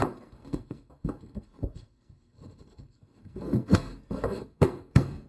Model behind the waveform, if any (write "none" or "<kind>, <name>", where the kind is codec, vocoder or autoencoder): codec, SNAC